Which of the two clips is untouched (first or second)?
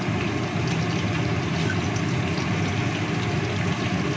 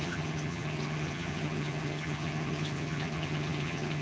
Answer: first